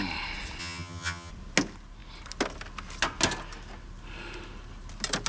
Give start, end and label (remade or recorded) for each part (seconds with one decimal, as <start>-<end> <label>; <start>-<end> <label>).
0.0-0.6 recorded; 0.6-1.3 remade; 1.3-5.3 recorded